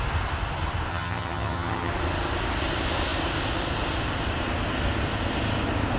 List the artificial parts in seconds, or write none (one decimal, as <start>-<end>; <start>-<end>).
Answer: 0.9-1.9